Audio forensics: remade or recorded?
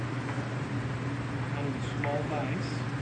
recorded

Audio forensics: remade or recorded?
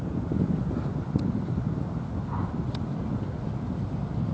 recorded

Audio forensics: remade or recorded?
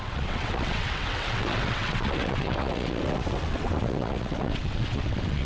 remade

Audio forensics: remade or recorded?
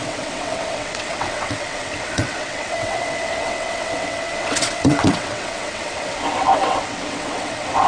remade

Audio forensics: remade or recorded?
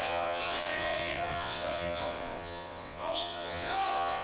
remade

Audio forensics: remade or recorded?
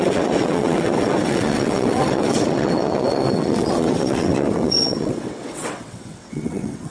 remade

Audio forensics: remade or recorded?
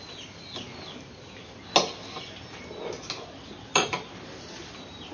recorded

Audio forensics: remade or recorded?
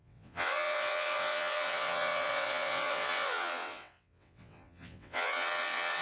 remade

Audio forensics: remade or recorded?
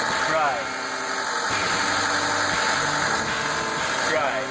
recorded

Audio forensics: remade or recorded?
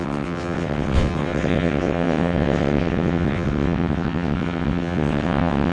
remade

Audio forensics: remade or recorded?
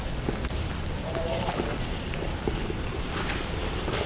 recorded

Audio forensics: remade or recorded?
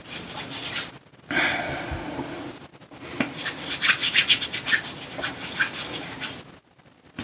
recorded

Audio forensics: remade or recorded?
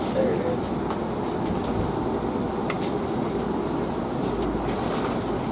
recorded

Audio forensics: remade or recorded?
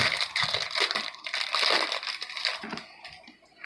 recorded